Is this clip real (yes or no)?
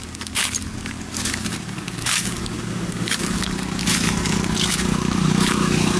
no